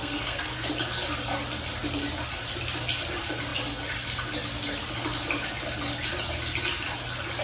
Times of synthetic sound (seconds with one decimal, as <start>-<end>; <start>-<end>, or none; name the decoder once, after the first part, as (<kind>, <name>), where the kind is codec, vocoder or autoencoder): 0.0-0.7 (codec, SNAC)